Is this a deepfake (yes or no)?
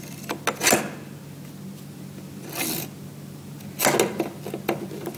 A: no